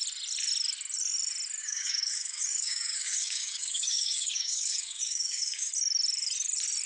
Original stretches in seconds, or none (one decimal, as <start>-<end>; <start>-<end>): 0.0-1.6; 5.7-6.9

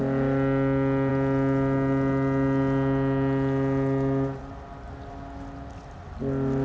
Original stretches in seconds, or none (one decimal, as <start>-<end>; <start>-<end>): 0.0-6.6

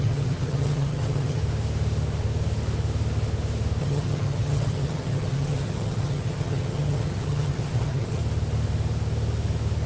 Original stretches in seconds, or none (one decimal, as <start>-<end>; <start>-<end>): 1.4-3.8; 8.2-9.9